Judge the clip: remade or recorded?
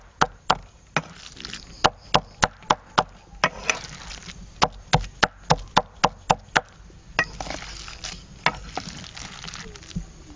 recorded